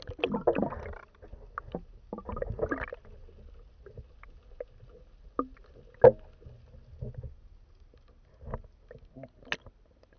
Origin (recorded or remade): recorded